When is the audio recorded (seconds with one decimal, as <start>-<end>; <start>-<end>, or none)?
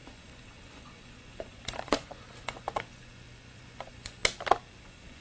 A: 4.2-4.8